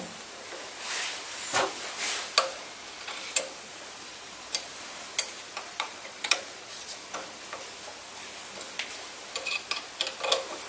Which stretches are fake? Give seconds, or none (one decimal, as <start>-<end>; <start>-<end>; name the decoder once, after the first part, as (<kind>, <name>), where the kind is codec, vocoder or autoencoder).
5.7-6.9 (vocoder, Vocos)